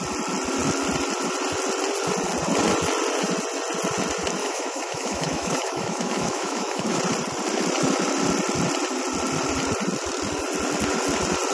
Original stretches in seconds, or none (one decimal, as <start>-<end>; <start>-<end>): 0.0-4.4; 7.0-11.5